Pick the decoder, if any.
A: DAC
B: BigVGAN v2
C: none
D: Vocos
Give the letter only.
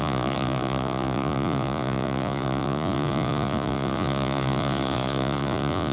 D